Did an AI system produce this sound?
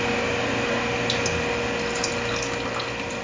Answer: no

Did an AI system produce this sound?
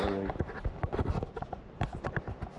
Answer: no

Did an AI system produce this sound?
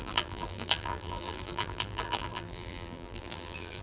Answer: yes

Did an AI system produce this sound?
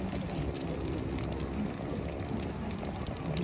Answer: no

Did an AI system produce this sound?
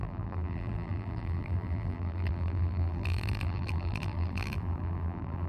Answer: yes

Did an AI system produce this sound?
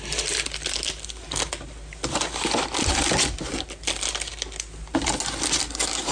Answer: no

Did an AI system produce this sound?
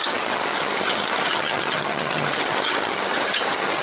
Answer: yes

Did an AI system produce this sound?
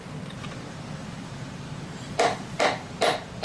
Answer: yes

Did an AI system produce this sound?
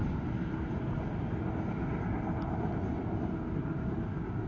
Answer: no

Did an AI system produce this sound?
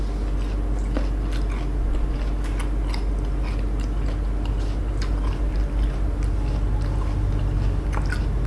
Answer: no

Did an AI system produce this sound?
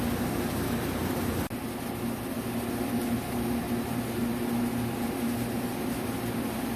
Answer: no